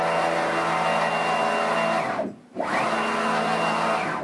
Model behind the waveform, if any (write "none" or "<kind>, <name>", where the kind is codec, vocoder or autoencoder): none